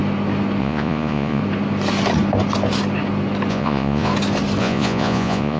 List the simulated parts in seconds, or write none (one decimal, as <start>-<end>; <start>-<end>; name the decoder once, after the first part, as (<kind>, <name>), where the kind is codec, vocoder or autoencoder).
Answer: 0.6-1.4 (vocoder, Vocos); 3.5-4.1; 4.6-5.6